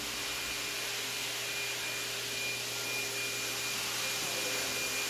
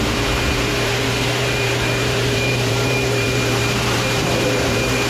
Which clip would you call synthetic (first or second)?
second